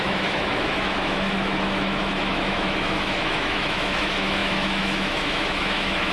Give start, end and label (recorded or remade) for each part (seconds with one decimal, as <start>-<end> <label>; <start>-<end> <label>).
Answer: 0.0-6.1 remade